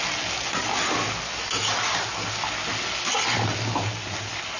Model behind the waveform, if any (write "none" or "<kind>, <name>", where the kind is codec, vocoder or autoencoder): none